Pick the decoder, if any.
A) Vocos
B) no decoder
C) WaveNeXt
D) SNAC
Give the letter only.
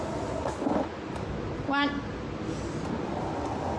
B